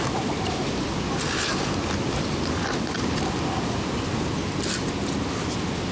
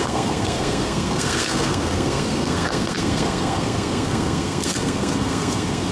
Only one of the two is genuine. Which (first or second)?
first